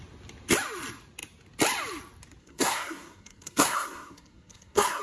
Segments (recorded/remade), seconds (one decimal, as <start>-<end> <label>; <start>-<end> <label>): 0.0-2.4 recorded; 2.4-5.0 remade